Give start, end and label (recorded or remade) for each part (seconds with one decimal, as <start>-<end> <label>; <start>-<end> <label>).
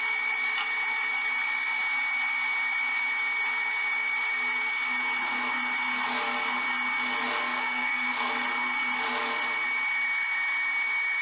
0.0-7.4 recorded; 7.4-8.3 remade; 8.3-11.2 recorded